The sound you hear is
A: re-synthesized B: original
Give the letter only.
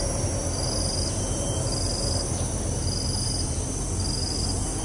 B